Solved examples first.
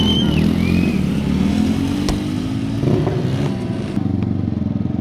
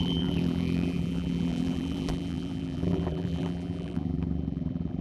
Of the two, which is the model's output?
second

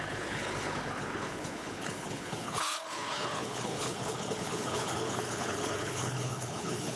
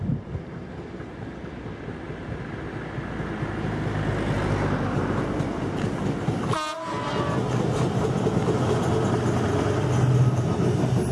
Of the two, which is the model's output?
first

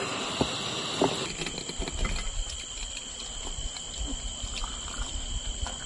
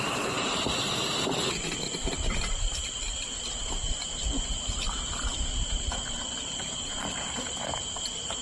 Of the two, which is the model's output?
second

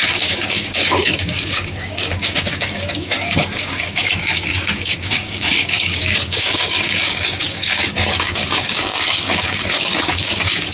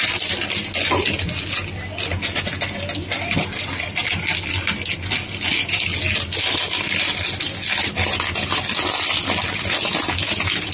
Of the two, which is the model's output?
first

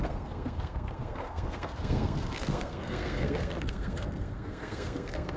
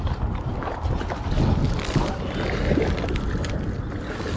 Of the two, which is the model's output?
first